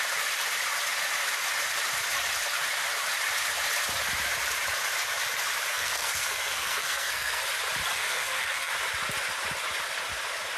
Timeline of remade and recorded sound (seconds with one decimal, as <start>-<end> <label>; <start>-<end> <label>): 0.0-5.7 recorded; 5.7-7.4 remade; 7.4-7.9 recorded; 7.9-8.7 remade; 8.7-10.6 recorded